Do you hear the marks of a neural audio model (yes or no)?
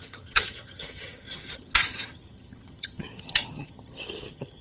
yes